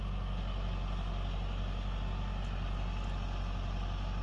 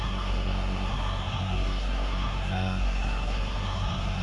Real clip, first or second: first